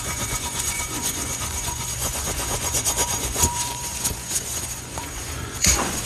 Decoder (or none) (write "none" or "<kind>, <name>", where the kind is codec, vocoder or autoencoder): vocoder, Vocos